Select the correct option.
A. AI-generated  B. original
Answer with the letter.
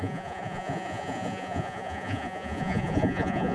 A